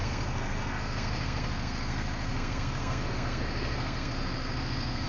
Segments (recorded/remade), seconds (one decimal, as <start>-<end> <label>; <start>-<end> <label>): 0.0-5.1 remade